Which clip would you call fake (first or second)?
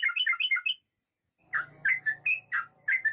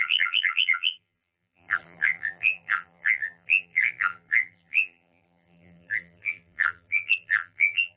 second